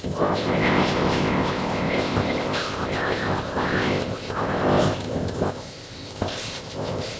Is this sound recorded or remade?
remade